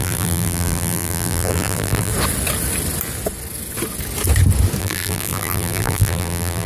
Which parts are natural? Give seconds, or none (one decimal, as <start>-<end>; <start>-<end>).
2.1-4.8